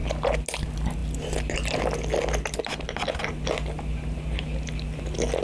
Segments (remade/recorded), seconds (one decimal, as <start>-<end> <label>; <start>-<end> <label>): 0.0-5.4 recorded